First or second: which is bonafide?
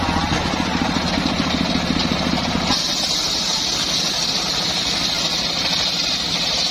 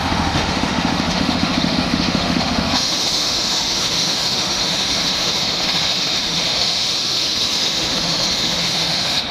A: first